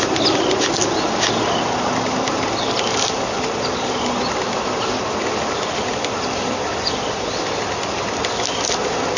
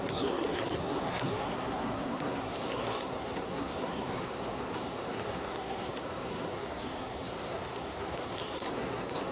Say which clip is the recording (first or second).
first